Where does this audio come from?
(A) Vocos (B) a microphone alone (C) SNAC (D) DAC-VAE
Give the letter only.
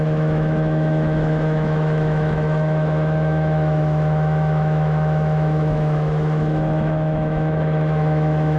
D